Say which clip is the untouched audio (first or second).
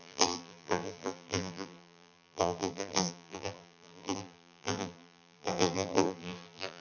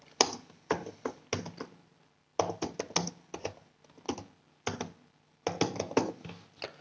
second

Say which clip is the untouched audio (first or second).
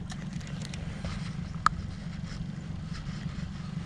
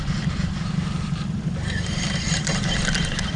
first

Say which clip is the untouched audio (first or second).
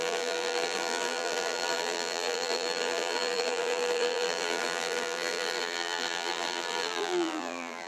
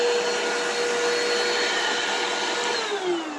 second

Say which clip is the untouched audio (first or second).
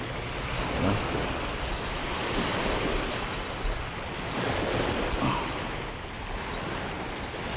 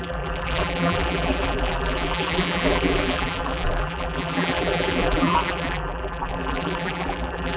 first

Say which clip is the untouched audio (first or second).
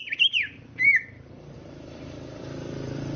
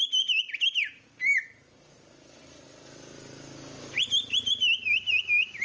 second